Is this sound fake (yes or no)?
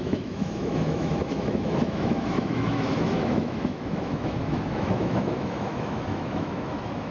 yes